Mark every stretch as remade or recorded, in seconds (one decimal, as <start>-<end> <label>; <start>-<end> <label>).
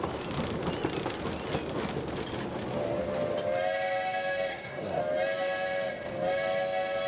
0.0-4.5 recorded; 4.5-5.0 remade; 5.0-7.1 recorded